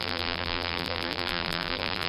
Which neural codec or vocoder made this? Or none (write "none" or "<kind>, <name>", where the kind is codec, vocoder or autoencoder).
vocoder, BigVGAN v2